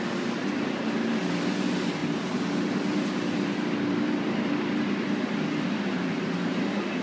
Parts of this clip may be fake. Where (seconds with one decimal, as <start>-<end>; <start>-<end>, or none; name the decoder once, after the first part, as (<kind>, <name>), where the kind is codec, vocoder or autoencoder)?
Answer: 2.0-6.2 (vocoder, BigVGAN v2)